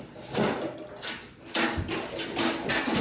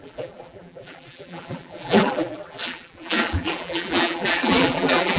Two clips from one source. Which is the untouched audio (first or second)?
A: first